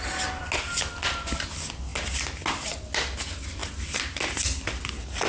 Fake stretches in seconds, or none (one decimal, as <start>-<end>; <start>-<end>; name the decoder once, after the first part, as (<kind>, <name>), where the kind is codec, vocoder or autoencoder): none